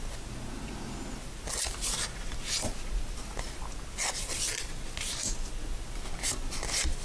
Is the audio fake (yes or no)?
no